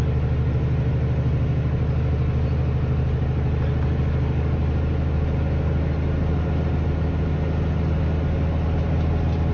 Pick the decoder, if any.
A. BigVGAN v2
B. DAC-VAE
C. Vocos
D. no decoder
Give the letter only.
D